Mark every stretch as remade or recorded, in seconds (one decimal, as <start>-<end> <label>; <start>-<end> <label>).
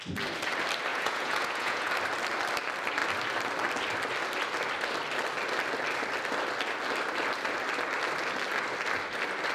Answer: 0.0-0.9 recorded; 0.9-1.9 remade; 1.9-9.5 recorded